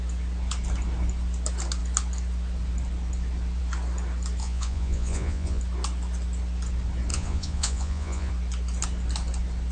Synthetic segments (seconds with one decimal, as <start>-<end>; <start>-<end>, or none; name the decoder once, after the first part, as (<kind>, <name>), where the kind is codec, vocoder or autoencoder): 4.4-5.6 (vocoder, Vocos); 7.1-8.3